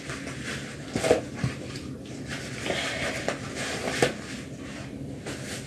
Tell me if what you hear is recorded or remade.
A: recorded